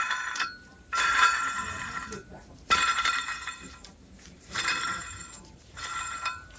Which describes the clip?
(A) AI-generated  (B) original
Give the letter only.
A